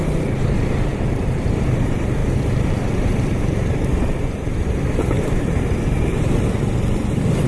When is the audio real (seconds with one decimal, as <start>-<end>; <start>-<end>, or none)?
none